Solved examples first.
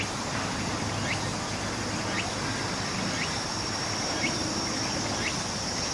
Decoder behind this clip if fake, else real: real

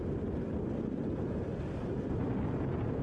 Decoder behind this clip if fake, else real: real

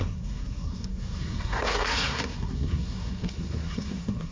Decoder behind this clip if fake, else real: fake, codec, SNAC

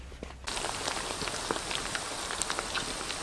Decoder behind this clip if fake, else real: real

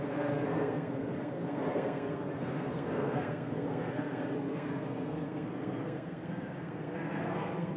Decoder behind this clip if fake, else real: fake, codec, SNAC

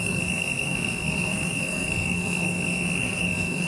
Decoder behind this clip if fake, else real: fake, codec, SNAC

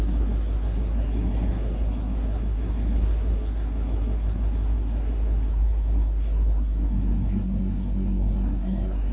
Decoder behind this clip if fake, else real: fake, codec, SNAC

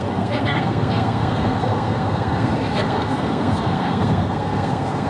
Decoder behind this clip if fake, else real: fake, codec, SNAC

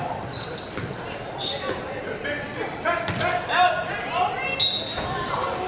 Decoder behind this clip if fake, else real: real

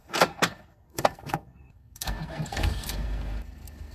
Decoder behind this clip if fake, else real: fake, codec, SNAC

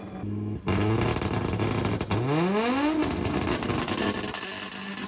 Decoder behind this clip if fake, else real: real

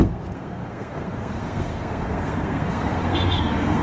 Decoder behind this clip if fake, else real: fake, codec, SNAC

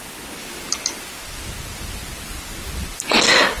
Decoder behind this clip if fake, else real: real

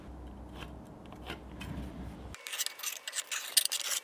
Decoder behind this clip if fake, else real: real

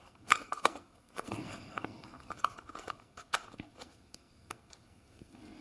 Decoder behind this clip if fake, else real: fake, codec, SNAC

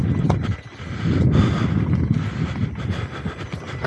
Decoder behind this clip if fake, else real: real